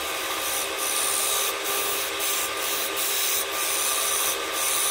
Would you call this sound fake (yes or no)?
no